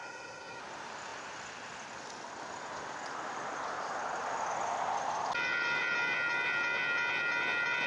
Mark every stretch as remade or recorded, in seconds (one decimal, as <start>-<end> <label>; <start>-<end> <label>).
0.0-0.6 remade; 0.6-7.9 recorded